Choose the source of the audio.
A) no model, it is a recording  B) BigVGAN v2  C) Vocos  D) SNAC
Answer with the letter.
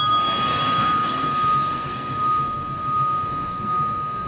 D